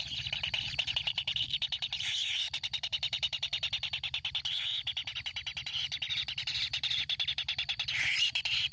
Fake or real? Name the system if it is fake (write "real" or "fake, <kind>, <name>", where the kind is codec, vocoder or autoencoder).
fake, vocoder, BigVGAN v2